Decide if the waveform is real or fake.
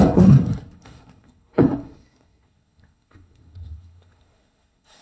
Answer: fake